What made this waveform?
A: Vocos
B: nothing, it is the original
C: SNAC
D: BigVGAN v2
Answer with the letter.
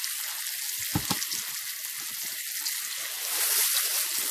B